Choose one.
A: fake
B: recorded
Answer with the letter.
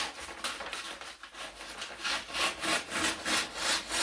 B